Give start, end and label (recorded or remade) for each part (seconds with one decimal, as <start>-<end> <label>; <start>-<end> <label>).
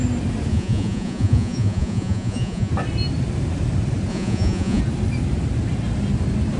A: 0.0-0.5 recorded; 0.5-2.7 remade; 2.7-4.1 recorded; 4.1-4.8 remade; 4.8-6.6 recorded